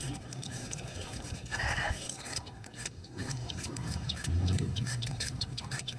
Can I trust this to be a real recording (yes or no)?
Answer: no